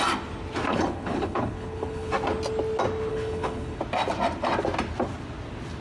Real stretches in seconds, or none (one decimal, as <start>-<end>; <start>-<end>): 0.0-0.7; 2.1-3.1; 3.8-5.8